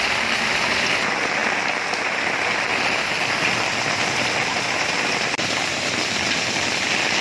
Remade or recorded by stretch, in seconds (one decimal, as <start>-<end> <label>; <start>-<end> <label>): 0.0-7.2 recorded